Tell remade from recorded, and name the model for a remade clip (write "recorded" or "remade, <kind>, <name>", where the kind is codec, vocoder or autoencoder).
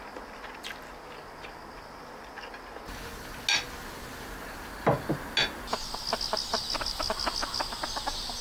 recorded